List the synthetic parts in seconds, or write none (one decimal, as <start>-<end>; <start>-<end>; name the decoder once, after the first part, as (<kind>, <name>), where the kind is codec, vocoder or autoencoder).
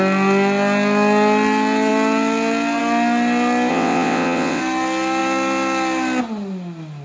3.7-4.6 (vocoder, WaveNeXt)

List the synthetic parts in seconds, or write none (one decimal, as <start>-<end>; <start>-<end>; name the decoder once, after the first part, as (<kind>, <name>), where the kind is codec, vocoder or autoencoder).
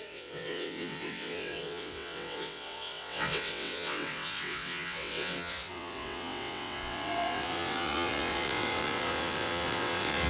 0.0-10.3 (vocoder, WaveNeXt)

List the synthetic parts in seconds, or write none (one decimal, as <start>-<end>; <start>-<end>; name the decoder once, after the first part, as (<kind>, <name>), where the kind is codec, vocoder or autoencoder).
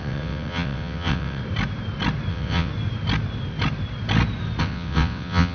0.0-1.4 (vocoder, WaveNeXt); 2.3-2.7; 4.6-5.5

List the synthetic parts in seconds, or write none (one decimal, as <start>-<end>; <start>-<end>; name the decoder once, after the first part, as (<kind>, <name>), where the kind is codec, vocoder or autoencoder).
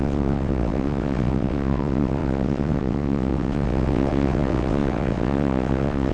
0.0-6.1 (vocoder, WaveNeXt)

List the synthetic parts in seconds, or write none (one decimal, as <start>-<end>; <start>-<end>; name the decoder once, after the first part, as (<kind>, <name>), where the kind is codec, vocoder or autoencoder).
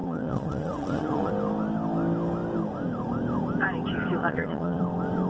0.0-1.3 (vocoder, WaveNeXt); 4.2-4.8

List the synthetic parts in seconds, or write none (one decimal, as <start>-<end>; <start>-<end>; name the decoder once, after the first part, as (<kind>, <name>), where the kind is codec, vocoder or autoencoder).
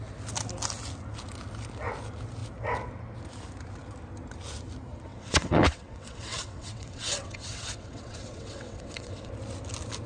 5.1-9.3 (vocoder, WaveNeXt)